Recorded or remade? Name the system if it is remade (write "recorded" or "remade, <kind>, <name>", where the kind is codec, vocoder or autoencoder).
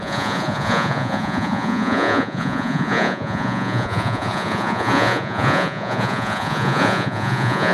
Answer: remade, vocoder, Vocos